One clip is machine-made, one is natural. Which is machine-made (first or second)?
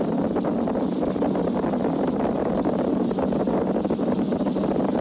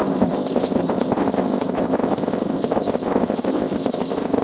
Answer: second